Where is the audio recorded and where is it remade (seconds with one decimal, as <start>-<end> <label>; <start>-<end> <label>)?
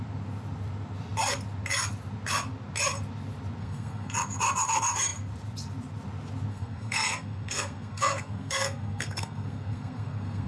0.0-3.6 recorded; 3.6-4.1 remade; 4.1-6.5 recorded; 6.5-10.5 remade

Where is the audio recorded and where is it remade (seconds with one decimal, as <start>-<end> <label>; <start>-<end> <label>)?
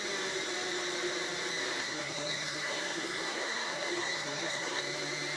0.0-1.8 recorded; 1.8-4.8 remade; 4.8-5.4 recorded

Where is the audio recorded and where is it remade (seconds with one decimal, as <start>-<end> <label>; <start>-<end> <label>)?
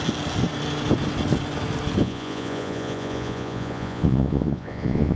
0.0-2.0 recorded; 2.0-5.2 remade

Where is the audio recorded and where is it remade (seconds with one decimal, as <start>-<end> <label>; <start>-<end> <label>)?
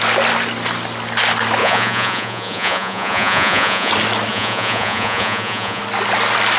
0.0-1.6 recorded; 1.6-3.9 remade; 3.9-4.3 recorded; 4.3-5.8 remade; 5.8-6.6 recorded